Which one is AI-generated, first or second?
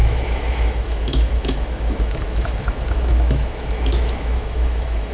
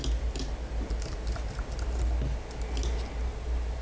first